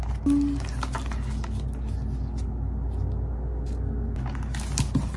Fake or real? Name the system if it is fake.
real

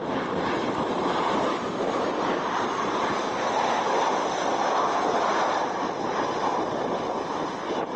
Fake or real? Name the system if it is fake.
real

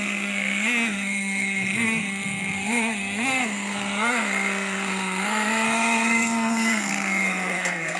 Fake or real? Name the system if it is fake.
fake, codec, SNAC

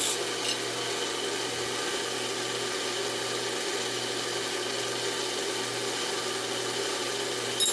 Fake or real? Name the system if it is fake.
real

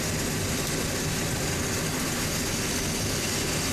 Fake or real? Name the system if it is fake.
real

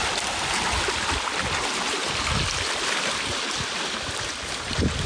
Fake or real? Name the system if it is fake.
real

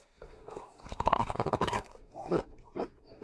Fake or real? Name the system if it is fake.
fake, codec, SNAC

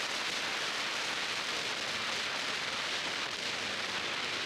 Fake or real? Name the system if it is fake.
real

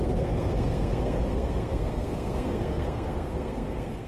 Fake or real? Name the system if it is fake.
fake, codec, SNAC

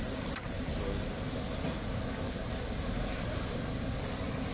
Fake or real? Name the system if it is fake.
real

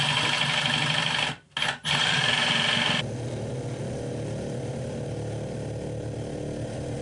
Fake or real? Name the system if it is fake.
real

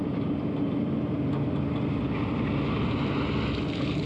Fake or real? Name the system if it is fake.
real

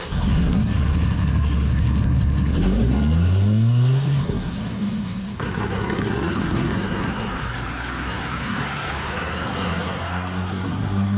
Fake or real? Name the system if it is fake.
fake, codec, SNAC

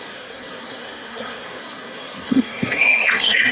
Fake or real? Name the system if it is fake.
fake, codec, SNAC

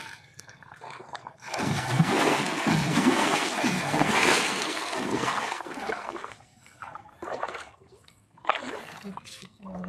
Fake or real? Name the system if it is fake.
fake, codec, SNAC